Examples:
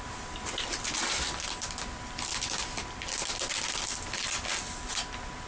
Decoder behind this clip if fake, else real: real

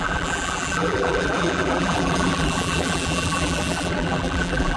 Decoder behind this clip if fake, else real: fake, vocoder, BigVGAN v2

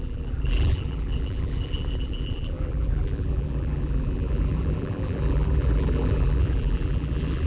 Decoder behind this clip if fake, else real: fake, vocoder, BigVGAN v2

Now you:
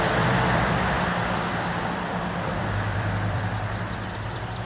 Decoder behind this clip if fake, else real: fake, vocoder, BigVGAN v2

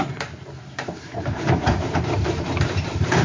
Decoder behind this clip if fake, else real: fake, vocoder, BigVGAN v2